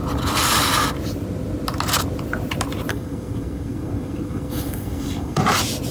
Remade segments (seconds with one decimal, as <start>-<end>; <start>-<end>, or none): 2.9-5.4